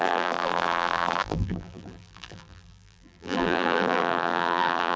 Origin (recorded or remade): remade